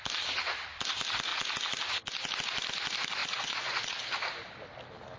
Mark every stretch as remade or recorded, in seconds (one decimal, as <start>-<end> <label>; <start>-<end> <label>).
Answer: 0.0-3.2 recorded; 3.2-4.0 remade; 4.0-5.2 recorded